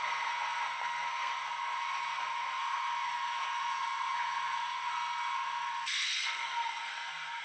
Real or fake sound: fake